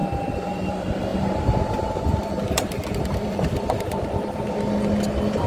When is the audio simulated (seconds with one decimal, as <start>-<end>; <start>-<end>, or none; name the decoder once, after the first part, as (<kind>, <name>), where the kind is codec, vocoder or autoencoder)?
0.0-0.7 (vocoder, BigVGAN v2); 1.1-4.4